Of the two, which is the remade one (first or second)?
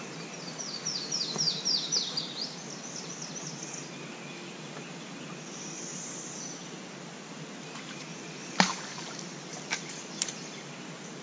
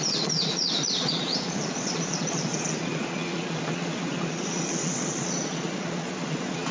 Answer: second